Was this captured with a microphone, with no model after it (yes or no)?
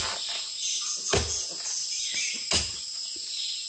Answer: yes